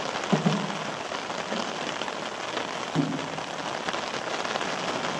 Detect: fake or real real